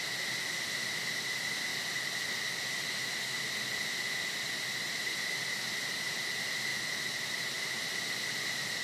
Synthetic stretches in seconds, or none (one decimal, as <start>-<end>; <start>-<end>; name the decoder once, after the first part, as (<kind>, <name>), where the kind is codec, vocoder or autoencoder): none